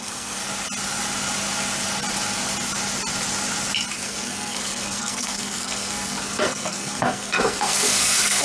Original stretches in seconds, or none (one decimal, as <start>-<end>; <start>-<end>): 0.4-3.9